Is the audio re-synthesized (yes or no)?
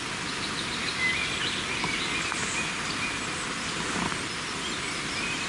no